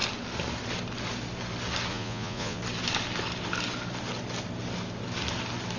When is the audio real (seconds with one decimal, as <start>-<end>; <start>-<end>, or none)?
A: 0.0-1.9; 2.6-5.8